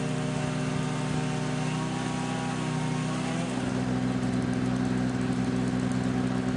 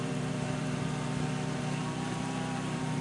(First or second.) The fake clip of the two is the second